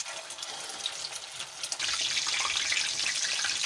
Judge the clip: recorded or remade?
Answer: recorded